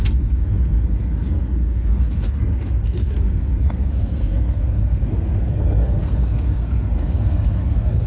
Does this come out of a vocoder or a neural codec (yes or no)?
yes